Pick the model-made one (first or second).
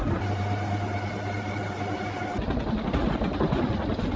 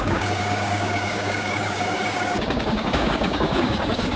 second